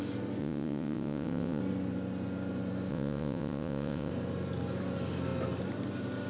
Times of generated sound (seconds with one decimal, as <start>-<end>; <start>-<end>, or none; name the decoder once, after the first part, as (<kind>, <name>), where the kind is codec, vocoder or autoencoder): 0.4-1.6 (vocoder, WaveNeXt); 2.9-4.1